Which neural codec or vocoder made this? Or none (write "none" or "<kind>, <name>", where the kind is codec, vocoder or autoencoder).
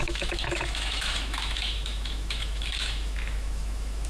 autoencoder, DAC-VAE